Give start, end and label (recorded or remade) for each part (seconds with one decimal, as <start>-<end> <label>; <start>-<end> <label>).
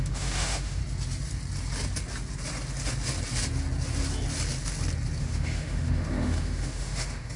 0.0-0.8 remade; 0.8-5.2 recorded; 5.2-7.4 remade